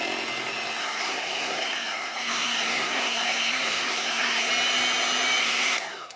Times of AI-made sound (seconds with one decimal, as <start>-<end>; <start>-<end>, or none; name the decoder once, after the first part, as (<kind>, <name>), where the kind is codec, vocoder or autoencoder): 0.8-4.5 (codec, SNAC); 5.4-6.2